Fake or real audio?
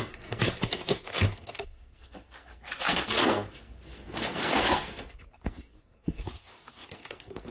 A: fake